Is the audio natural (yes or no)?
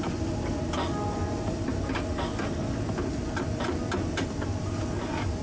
yes